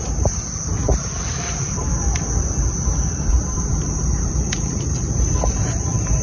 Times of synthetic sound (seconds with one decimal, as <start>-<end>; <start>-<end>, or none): 0.0-1.9; 3.3-6.2